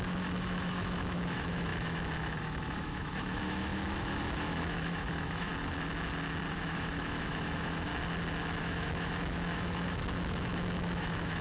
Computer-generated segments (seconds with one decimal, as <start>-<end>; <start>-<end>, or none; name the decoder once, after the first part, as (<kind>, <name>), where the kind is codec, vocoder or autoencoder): 0.0-5.5 (autoencoder, DAC-VAE); 6.5-7.9; 8.6-11.4